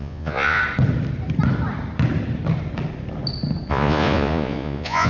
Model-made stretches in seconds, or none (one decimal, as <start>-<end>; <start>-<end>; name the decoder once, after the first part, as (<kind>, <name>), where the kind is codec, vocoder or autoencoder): 0.0-0.6 (vocoder, Vocos); 3.7-5.1